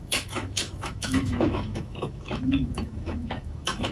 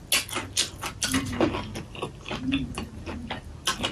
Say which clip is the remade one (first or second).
first